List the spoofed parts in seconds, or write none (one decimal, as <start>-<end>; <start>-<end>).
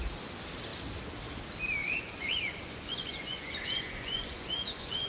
1.8-5.1